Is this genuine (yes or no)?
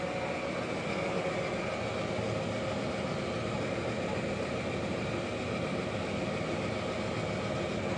yes